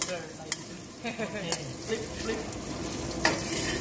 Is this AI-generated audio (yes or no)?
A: no